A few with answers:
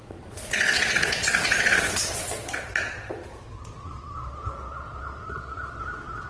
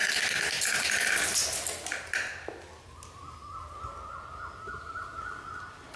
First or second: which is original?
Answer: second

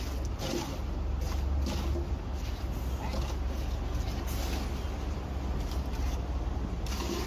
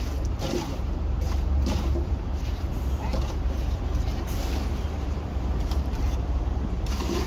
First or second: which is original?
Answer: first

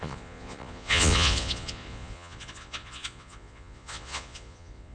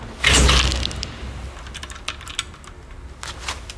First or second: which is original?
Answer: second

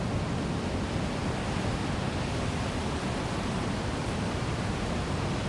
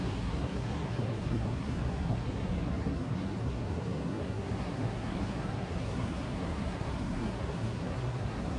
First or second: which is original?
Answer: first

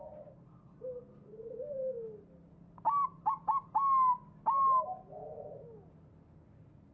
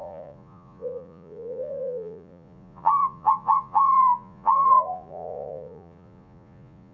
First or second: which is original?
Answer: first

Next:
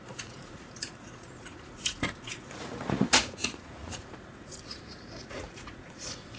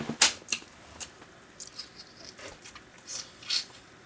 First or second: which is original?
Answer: second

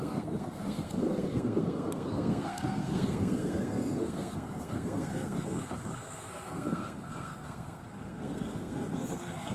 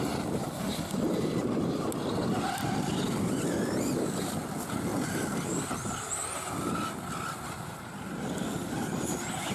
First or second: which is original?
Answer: second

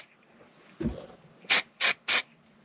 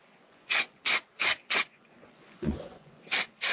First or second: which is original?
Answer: first